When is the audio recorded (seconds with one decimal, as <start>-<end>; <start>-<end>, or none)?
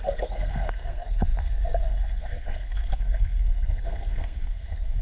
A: none